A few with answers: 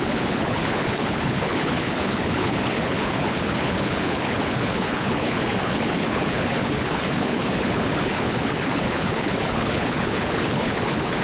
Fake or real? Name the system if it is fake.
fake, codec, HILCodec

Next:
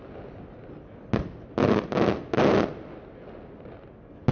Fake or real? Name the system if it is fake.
real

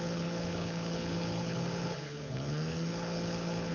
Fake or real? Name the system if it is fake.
fake, codec, HILCodec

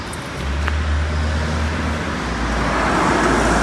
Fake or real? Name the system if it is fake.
real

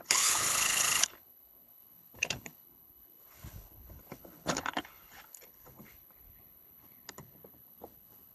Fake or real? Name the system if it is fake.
fake, codec, HILCodec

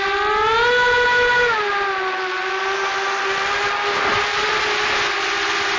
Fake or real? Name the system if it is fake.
real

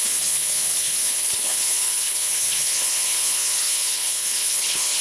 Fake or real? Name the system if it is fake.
fake, codec, HILCodec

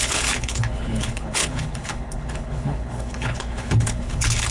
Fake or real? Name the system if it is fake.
fake, codec, HILCodec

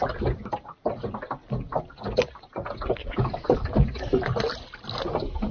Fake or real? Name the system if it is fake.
real